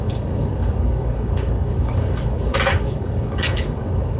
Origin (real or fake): fake